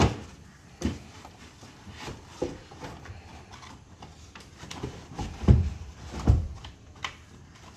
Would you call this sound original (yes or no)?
yes